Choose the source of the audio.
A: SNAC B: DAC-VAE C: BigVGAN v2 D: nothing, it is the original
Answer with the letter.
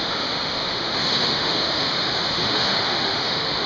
B